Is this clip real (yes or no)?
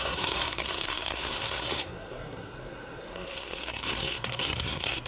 no